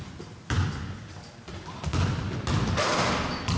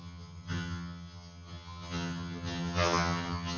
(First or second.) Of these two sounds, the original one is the first